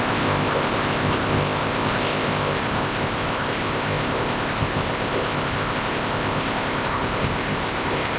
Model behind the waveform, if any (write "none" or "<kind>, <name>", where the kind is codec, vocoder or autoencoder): codec, ZipCodec